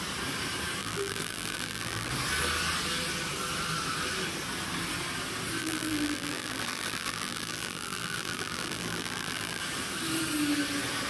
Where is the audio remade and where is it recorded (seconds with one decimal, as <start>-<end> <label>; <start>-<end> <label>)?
0.0-0.8 recorded; 0.8-2.1 remade; 2.1-5.6 recorded; 5.6-9.6 remade; 9.6-11.1 recorded